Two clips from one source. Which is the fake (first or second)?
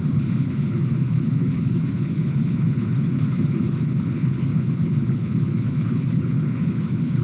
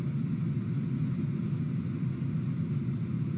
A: first